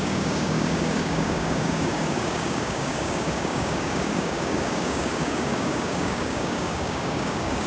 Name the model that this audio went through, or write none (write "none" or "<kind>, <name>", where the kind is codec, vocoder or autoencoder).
codec, DAC